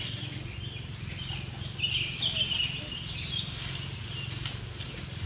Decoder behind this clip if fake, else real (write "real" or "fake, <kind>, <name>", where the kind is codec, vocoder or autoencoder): real